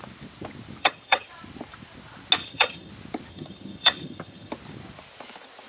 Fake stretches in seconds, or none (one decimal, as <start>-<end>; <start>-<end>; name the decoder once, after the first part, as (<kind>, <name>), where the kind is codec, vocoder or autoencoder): 0.8-1.3 (vocoder, HiFi-GAN); 2.4-2.9; 3.3-4.5